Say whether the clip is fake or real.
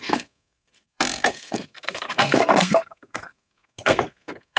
fake